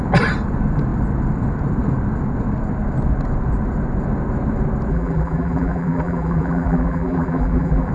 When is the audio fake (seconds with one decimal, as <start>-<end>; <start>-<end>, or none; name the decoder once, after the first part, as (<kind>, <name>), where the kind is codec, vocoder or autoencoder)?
4.9-7.9 (vocoder, BigVGAN v2)